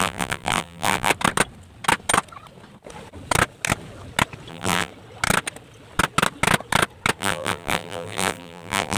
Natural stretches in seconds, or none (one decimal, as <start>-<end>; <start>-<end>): 1.1-4.5; 4.9-7.2